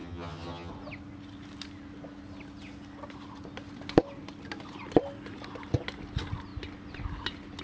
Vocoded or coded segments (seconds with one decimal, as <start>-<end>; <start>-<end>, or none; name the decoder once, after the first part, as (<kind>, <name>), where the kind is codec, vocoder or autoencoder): 0.0-0.7 (vocoder, HiFi-GAN)

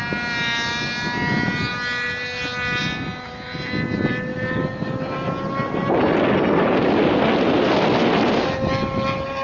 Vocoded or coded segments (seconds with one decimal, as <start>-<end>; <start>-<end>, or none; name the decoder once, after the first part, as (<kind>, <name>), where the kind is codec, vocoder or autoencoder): none

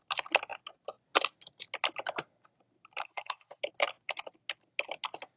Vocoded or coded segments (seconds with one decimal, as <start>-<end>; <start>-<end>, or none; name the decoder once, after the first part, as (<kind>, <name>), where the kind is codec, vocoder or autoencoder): 3.0-3.6 (codec, HILCodec)

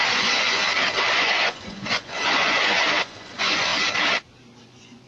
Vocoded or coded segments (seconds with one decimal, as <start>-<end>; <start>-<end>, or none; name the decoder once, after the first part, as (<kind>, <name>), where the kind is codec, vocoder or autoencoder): 0.0-0.6 (vocoder, Vocos); 1.1-3.7; 4.6-5.1

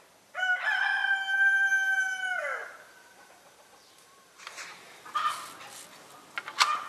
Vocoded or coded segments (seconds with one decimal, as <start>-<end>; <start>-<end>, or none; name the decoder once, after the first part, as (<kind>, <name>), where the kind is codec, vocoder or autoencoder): 2.6-5.3 (vocoder, BigVGAN v2)

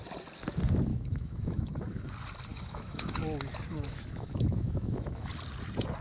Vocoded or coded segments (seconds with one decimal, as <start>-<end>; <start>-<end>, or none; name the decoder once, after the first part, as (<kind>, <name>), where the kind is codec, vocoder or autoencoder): 0.9-2.1 (autoencoder, DAC-VAE); 2.5-3.2; 3.7-5.3